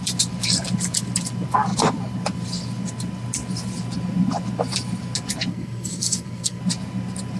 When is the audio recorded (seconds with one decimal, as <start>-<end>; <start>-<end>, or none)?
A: 0.0-5.5; 6.6-7.4

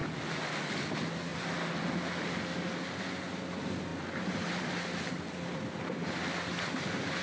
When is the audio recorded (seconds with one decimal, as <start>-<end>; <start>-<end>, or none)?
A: 0.7-1.3; 1.9-7.2